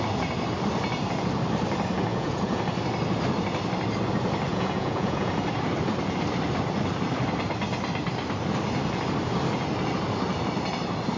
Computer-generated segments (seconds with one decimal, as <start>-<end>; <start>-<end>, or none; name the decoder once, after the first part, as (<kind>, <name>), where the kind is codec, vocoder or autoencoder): 2.1-2.6 (vocoder, Vocos); 4.5-5.3